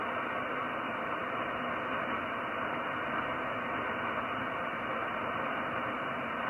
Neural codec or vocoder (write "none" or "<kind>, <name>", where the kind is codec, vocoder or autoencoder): none